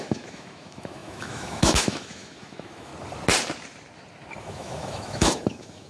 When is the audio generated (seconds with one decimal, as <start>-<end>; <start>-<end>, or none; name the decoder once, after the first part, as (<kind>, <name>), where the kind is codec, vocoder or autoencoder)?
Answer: 0.0-2.9 (autoencoder, DAC-VAE); 4.4-5.9

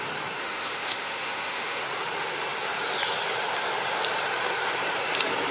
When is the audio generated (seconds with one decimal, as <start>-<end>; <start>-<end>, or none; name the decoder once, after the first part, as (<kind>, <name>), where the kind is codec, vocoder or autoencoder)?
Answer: 0.4-1.8 (autoencoder, DAC-VAE)